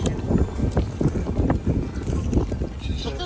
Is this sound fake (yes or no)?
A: no